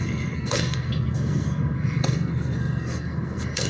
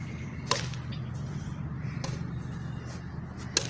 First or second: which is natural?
second